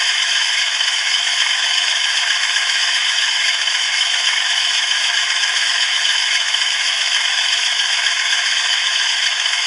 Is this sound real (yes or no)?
no